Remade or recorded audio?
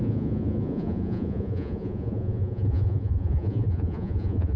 remade